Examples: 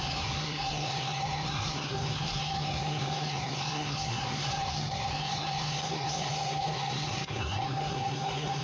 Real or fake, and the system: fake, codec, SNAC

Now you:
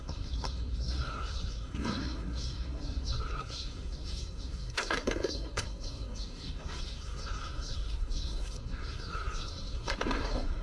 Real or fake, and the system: fake, codec, SNAC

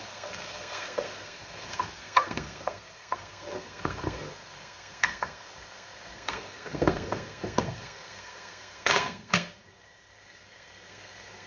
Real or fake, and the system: fake, codec, SNAC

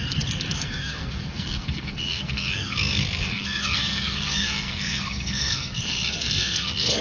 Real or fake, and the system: fake, codec, SNAC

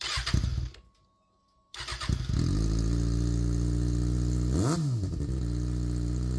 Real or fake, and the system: real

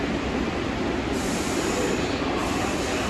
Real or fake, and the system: real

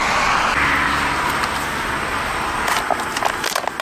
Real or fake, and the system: real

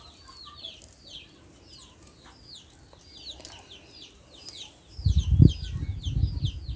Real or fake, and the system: real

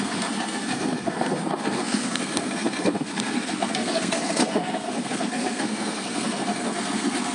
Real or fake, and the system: fake, codec, SNAC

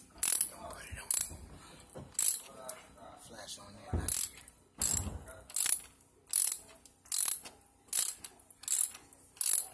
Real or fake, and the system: real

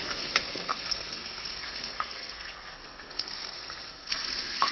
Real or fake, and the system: fake, codec, SNAC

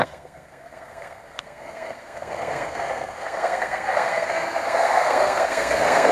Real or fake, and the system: fake, codec, SNAC